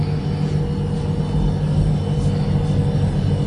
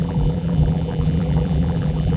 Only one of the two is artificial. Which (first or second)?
second